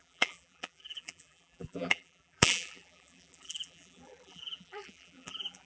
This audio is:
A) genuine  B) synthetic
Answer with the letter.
B